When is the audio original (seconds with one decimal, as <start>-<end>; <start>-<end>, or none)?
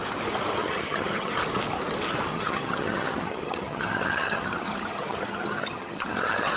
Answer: 0.0-0.6; 1.3-2.3